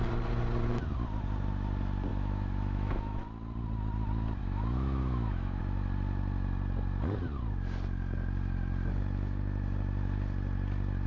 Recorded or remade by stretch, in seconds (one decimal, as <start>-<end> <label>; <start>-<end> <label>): 0.0-2.1 recorded; 2.1-3.2 remade; 3.2-4.4 recorded; 4.4-5.6 remade; 5.6-11.1 recorded